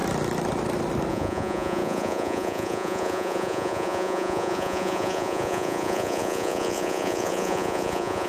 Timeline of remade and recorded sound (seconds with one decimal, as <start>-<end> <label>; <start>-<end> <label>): 0.0-1.1 recorded; 1.1-8.3 remade